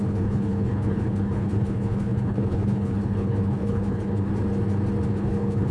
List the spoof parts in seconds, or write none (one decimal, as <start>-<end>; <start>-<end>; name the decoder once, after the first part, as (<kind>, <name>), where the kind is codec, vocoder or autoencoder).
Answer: 0.0-4.3 (codec, HILCodec); 5.1-5.7